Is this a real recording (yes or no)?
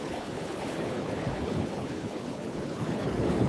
no